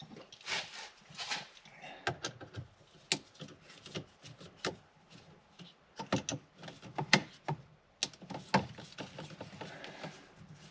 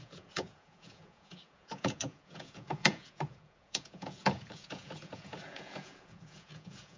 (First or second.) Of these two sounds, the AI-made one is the second